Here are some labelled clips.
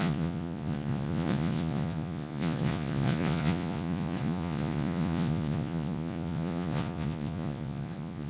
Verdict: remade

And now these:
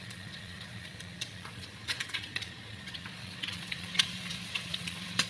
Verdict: remade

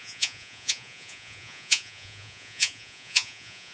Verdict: remade